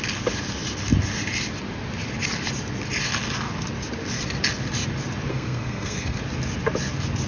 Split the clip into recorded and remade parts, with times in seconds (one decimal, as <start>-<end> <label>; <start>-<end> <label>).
0.0-5.3 recorded; 5.3-6.2 remade; 6.2-7.3 recorded

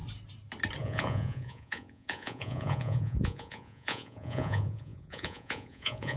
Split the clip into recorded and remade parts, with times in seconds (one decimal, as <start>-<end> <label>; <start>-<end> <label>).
0.0-0.8 recorded; 0.8-6.2 remade

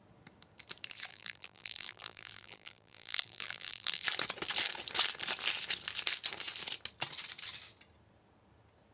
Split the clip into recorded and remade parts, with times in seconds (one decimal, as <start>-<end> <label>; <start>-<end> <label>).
0.0-1.1 recorded; 1.1-4.0 remade; 4.0-8.9 recorded

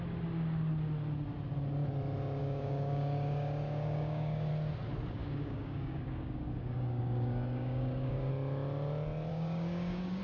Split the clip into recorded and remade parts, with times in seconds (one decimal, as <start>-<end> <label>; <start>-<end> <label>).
0.0-2.4 recorded; 2.4-4.5 remade; 4.5-5.2 recorded; 5.2-8.3 remade; 8.3-9.3 recorded; 9.3-10.2 remade